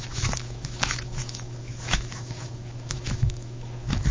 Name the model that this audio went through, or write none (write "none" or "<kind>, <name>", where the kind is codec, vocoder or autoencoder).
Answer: autoencoder, DAC-VAE